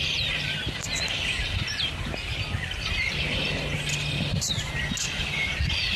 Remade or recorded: recorded